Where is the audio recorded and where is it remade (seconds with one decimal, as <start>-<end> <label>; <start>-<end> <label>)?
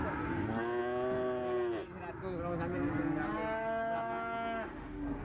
0.0-5.2 recorded